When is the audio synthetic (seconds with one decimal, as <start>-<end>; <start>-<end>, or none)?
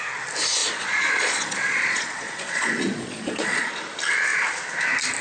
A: 0.6-3.7